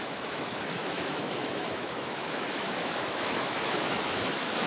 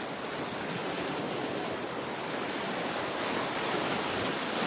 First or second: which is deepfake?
first